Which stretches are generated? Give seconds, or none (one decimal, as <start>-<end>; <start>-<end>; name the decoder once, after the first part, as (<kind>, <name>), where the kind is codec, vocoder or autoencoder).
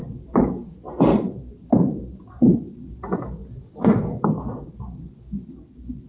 0.0-0.5 (vocoder, BigVGAN v2); 1.1-2.4